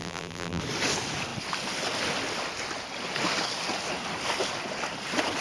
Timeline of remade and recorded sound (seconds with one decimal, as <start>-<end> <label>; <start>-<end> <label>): 0.0-0.6 remade; 0.6-5.4 recorded